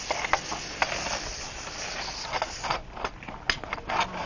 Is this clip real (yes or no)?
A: yes